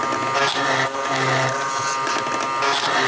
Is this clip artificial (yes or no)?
no